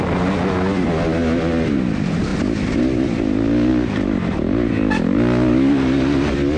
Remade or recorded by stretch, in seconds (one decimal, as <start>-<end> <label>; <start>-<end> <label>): 0.0-6.6 recorded